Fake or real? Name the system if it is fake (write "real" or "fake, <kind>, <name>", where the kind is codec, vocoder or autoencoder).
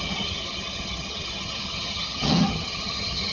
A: fake, vocoder, HiFi-GAN